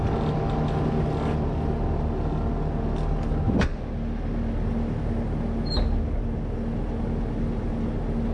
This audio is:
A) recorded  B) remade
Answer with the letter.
A